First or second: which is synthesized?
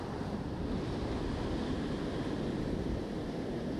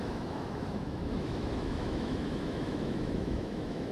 second